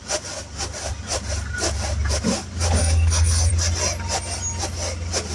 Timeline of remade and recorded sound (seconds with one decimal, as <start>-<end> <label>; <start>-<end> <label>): 0.0-2.8 recorded; 2.8-3.5 remade; 3.5-5.3 recorded